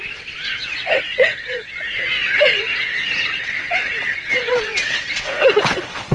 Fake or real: fake